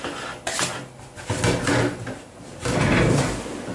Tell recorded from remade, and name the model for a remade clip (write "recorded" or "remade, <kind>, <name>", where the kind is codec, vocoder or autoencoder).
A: recorded